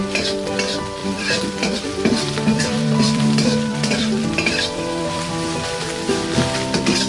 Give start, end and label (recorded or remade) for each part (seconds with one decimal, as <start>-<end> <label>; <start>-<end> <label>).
0.0-1.0 recorded; 1.0-5.3 remade; 5.3-7.1 recorded